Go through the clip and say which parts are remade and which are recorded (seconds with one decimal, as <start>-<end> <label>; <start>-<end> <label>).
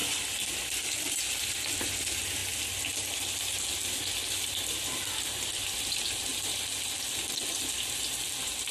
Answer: 0.0-1.9 remade; 1.9-8.7 recorded